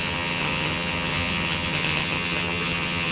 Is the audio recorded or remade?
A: remade